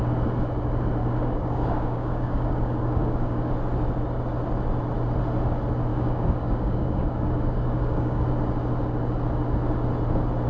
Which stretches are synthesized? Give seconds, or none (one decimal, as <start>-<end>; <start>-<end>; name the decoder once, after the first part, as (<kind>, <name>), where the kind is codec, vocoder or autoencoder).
1.0-3.5 (codec, DAC); 5.9-8.3